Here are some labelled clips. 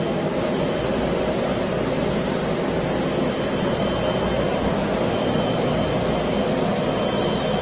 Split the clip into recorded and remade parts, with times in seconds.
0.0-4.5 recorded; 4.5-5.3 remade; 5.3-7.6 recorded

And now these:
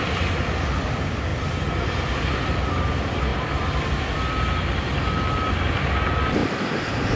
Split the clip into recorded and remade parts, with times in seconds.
0.0-6.4 recorded; 6.4-7.2 remade

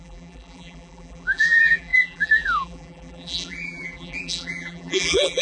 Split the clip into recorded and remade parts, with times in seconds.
0.0-5.4 remade

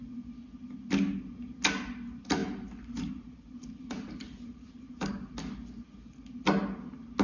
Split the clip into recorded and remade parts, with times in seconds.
0.0-2.4 recorded; 2.4-5.1 remade; 5.1-7.2 recorded

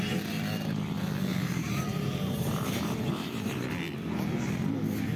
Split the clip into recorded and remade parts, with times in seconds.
0.0-1.3 recorded; 1.3-3.6 remade; 3.6-5.2 recorded

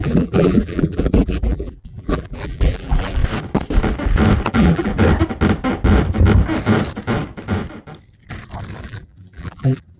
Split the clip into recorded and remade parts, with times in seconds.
0.0-3.2 remade; 3.2-4.5 recorded; 4.5-4.9 remade; 4.9-8.8 recorded; 8.8-10.0 remade